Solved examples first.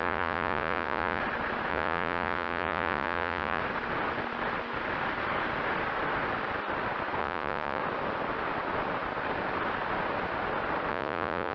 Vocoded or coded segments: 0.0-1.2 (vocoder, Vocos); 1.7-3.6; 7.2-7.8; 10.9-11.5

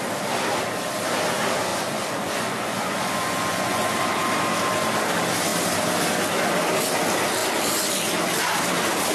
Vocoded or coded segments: 1.7-3.9 (vocoder, Vocos)

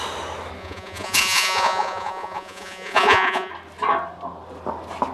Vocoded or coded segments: 0.6-3.5 (vocoder, Vocos)

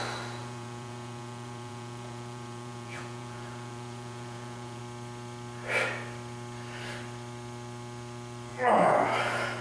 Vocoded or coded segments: 0.4-4.8 (vocoder, Vocos); 8.5-9.0

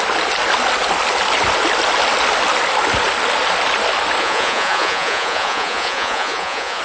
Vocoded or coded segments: 4.2-6.8 (vocoder, Vocos)

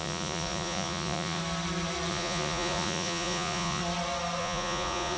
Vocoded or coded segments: 0.0-1.4 (vocoder, Vocos); 2.1-3.8; 4.4-5.2

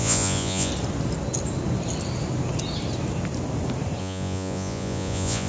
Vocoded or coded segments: 0.0-0.7 (vocoder, Vocos); 4.0-5.5